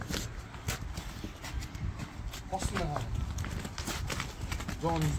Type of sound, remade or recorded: recorded